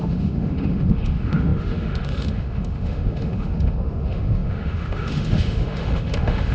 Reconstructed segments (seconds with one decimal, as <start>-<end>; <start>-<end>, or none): 0.0-6.5